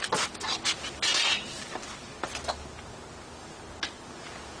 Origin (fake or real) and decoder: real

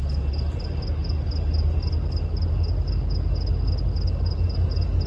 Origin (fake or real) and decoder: real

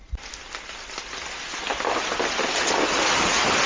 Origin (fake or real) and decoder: real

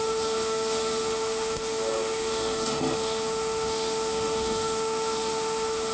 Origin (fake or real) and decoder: fake, autoencoder, DAC-VAE